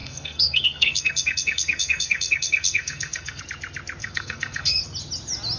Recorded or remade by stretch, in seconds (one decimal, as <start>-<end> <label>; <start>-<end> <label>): 0.0-3.4 remade; 3.4-4.0 recorded; 4.0-4.8 remade; 4.8-5.6 recorded